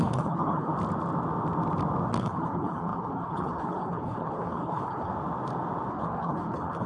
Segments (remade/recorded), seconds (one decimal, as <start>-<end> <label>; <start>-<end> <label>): 0.0-0.7 remade; 0.7-2.2 recorded; 2.2-5.1 remade; 5.1-5.9 recorded; 5.9-6.9 remade